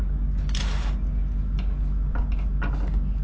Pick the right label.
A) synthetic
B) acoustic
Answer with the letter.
B